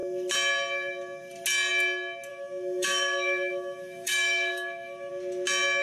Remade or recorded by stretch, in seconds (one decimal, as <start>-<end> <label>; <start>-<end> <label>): 0.0-2.3 recorded; 2.3-5.1 remade; 5.1-5.8 recorded